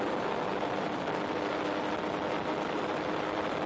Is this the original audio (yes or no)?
yes